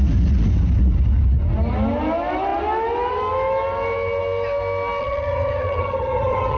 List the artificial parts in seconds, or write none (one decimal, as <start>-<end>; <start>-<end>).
5.0-6.6